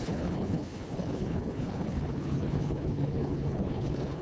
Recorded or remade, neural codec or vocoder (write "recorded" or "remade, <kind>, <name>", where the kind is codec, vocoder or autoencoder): remade, codec, HILCodec